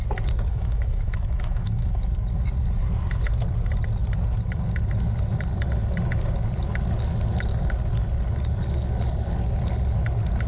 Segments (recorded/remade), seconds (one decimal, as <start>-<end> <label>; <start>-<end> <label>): 0.0-0.5 recorded; 0.5-1.9 remade; 1.9-10.5 recorded